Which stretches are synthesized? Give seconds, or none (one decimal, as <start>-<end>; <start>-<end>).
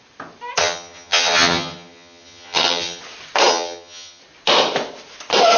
0.6-3.0; 3.5-4.2